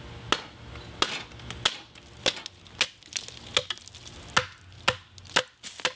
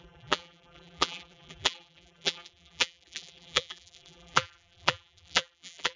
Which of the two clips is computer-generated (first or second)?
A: second